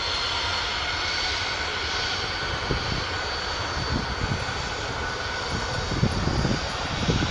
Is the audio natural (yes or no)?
yes